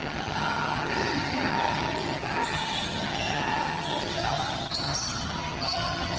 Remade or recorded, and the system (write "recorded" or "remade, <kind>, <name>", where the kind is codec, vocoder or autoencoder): remade, vocoder, HiFi-GAN